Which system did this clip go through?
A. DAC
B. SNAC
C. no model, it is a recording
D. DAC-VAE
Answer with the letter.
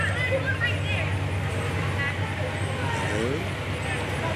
C